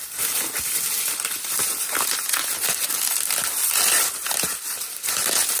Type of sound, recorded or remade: recorded